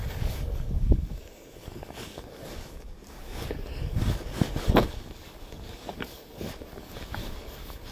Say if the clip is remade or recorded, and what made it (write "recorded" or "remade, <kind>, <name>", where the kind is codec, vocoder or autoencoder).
remade, codec, DAC